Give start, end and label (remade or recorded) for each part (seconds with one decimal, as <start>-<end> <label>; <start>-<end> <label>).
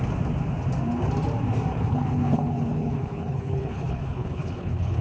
0.0-1.7 recorded; 1.7-5.0 remade